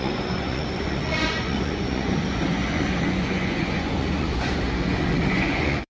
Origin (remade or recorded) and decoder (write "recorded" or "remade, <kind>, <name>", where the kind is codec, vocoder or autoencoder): remade, vocoder, Vocos